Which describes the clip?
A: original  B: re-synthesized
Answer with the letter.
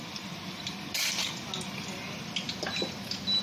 A